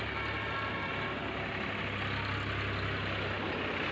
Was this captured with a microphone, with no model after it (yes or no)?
yes